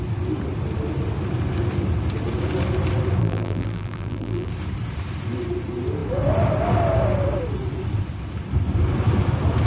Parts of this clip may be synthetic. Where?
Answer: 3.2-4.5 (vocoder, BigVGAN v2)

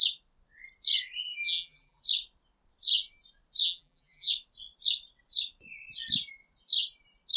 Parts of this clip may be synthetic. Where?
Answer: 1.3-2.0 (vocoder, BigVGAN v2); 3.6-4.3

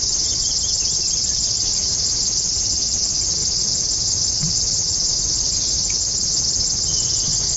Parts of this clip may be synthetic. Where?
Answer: 3.4-5.1 (vocoder, BigVGAN v2)

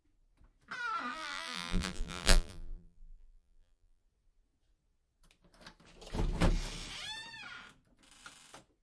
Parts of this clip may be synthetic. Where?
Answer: 1.1-4.0 (vocoder, BigVGAN v2)